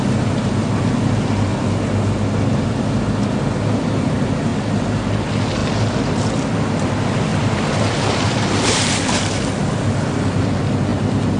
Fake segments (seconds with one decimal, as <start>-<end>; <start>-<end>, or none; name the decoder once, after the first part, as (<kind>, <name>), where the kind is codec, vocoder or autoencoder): 7.3-8.8 (vocoder, BigVGAN v2)